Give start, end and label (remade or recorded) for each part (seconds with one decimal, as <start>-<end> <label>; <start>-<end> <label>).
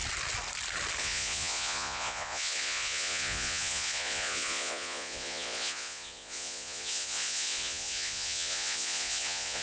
0.0-1.0 recorded; 1.0-9.6 remade